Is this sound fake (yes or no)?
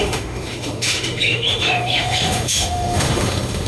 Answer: yes